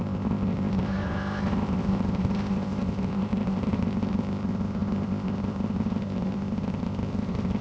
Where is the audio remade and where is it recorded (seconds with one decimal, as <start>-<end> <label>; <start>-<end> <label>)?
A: 0.0-7.6 remade